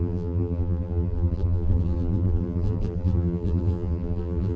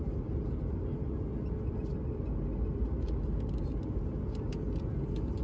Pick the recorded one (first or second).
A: second